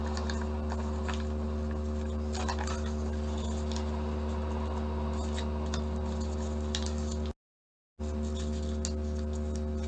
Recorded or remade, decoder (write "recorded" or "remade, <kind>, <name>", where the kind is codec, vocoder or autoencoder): recorded